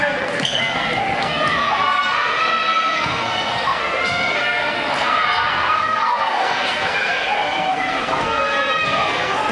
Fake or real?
fake